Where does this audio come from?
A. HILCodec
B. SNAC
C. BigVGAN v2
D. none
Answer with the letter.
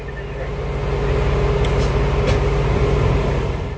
D